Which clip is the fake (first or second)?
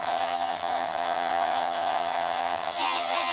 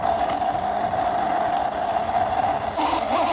first